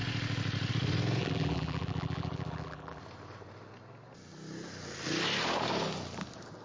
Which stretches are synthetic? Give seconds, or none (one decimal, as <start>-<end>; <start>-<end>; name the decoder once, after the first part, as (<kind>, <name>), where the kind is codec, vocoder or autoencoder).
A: 1.2-3.0 (vocoder, BigVGAN v2)